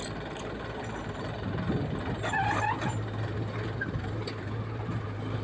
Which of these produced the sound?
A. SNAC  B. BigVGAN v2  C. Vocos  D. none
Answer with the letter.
B